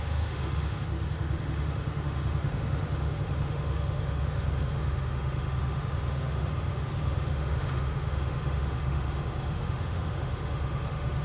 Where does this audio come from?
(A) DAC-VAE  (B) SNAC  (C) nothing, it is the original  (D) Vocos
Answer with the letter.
A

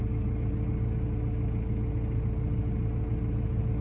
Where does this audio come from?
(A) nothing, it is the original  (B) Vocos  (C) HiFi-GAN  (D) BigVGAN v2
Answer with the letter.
A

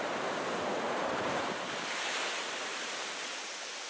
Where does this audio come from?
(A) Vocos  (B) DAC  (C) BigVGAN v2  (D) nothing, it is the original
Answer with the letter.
C